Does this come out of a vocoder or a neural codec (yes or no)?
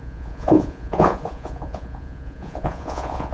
yes